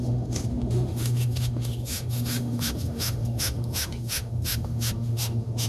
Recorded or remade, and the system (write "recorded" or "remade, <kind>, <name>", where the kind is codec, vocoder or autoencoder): remade, autoencoder, DAC-VAE